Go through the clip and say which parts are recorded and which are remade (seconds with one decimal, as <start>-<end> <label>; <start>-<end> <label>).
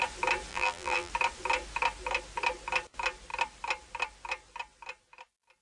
0.0-0.5 recorded; 0.5-1.1 remade; 1.1-5.6 recorded